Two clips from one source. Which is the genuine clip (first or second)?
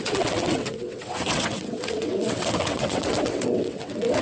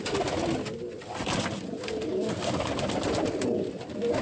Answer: second